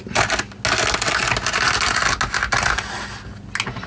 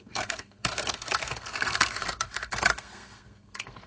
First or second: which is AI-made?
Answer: second